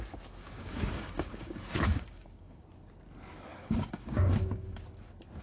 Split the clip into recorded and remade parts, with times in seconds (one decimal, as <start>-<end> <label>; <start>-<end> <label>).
0.0-0.4 recorded; 0.4-2.6 remade; 2.6-3.5 recorded; 3.5-4.8 remade; 4.8-5.4 recorded